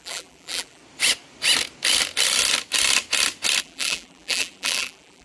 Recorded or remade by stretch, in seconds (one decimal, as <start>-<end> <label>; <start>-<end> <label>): 0.0-0.8 remade; 0.8-3.6 recorded; 3.6-5.2 remade